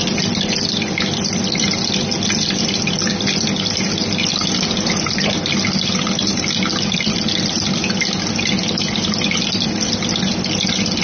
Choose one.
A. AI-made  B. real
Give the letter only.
B